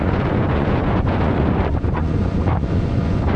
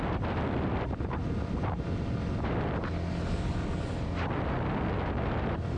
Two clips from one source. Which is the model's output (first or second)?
first